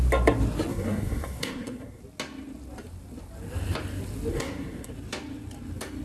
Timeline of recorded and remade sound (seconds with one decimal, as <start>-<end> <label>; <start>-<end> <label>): 0.0-0.7 recorded; 0.7-2.0 remade; 2.0-4.3 recorded; 4.3-4.9 remade; 4.9-6.0 recorded